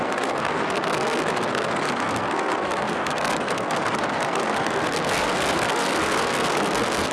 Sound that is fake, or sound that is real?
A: fake